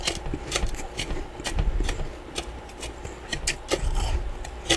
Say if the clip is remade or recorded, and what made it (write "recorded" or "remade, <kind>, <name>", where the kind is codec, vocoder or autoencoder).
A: recorded